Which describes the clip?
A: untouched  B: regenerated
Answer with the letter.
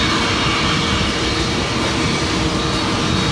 A